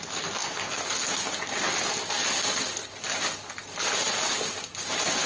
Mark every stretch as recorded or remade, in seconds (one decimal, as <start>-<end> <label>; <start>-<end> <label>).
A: 0.0-0.4 recorded; 0.4-0.9 remade; 0.9-5.3 recorded